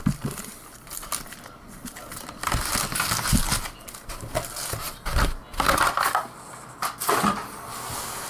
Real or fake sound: real